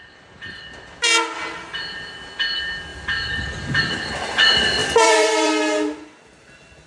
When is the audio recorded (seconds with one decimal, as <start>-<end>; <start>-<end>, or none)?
0.0-4.8; 5.5-6.9